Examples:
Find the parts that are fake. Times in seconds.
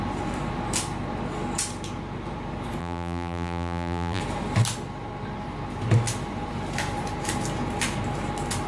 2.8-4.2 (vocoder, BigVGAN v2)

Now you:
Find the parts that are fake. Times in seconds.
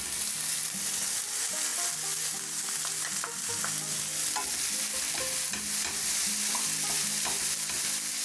none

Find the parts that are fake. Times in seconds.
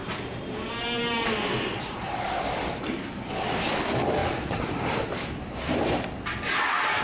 0.0-3.3 (vocoder, BigVGAN v2); 4.2-5.8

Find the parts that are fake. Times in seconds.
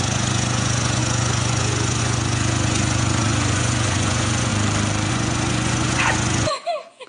0.0-4.5 (vocoder, Vocos); 5.1-7.1